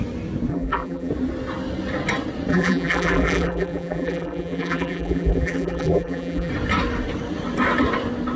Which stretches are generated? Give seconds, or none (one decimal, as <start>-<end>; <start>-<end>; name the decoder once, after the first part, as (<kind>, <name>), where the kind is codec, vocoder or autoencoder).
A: 0.5-1.1 (vocoder, BigVGAN v2); 2.5-6.5